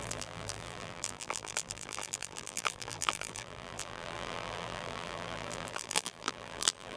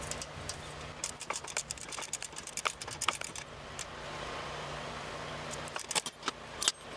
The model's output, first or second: first